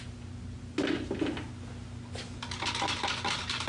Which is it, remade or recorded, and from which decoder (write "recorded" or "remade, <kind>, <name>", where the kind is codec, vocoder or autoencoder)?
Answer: recorded